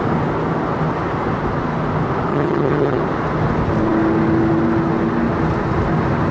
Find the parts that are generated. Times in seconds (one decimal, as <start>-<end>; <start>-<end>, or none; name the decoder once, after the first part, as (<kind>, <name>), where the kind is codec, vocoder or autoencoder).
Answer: 2.3-3.0 (vocoder, HiFi-GAN)